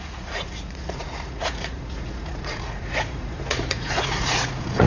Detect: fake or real fake